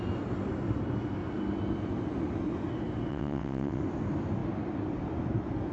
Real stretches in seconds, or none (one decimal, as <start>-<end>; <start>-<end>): 0.0-3.1; 3.8-5.7